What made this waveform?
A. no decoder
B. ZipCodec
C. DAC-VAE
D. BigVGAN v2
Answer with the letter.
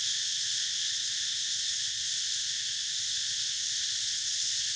B